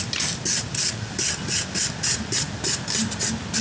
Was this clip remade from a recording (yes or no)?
no